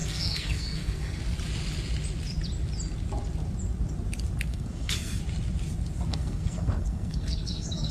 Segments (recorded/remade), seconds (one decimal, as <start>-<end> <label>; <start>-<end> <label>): 0.0-1.2 remade; 1.2-4.5 recorded; 4.5-5.2 remade; 5.2-6.1 recorded; 6.1-7.9 remade